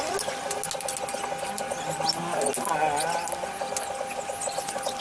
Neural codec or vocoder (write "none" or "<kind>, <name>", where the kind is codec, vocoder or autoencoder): none